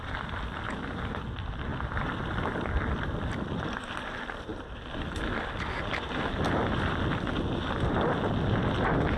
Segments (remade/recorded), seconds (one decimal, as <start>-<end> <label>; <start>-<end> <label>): 0.0-9.2 recorded